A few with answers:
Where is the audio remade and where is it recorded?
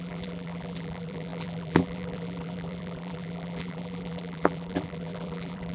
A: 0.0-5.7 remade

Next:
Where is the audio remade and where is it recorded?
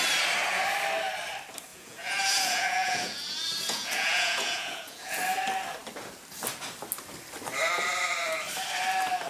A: 0.0-1.7 recorded; 1.7-5.2 remade; 5.2-9.3 recorded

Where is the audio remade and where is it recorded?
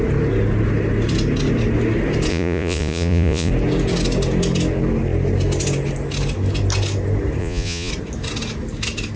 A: 0.0-2.3 recorded; 2.3-3.5 remade; 3.5-7.4 recorded; 7.4-7.9 remade; 7.9-9.2 recorded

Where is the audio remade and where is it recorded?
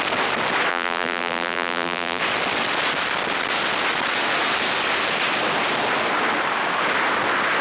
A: 0.0-0.7 recorded; 0.7-2.2 remade; 2.2-7.6 recorded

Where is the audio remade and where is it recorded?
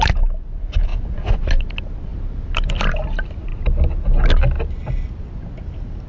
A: 0.0-2.1 recorded; 2.1-2.7 remade; 2.7-6.1 recorded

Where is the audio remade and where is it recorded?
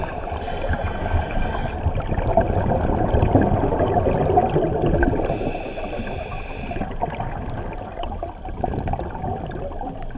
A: 0.0-1.0 recorded; 1.0-1.7 remade; 1.7-10.2 recorded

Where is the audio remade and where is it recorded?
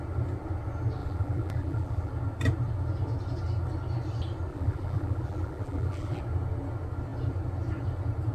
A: 0.0-1.0 recorded; 1.0-2.1 remade; 2.1-4.5 recorded; 4.5-6.2 remade; 6.2-8.3 recorded